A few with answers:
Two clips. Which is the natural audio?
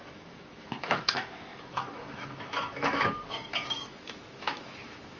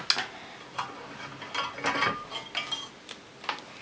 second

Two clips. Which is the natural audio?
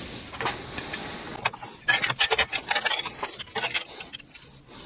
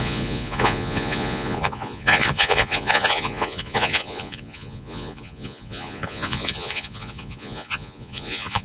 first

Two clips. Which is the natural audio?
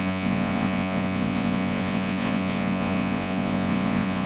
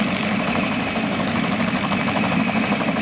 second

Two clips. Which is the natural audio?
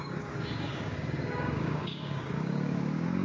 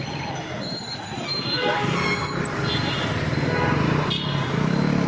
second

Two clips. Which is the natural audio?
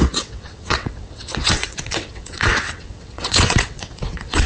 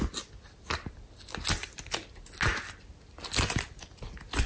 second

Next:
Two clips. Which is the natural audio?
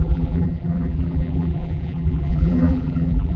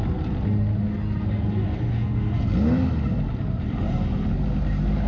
second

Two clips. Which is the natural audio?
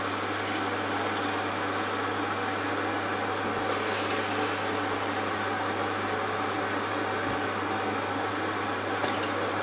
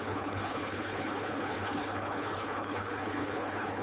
first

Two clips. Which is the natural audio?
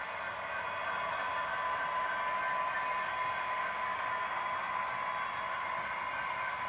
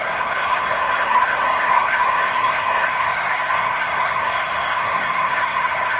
first